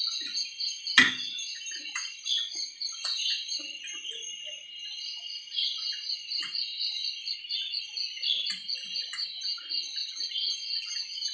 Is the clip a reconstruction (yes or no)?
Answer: no